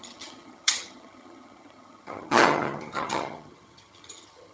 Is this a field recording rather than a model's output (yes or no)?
no